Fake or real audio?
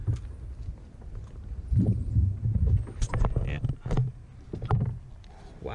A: real